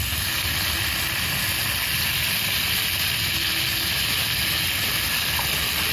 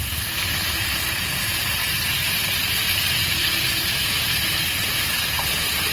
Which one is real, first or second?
first